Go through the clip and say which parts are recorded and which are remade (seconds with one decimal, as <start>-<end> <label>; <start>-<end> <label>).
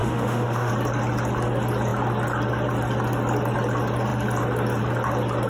0.0-0.7 remade; 0.7-5.5 recorded